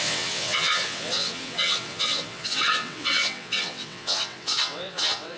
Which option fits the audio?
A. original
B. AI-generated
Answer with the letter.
B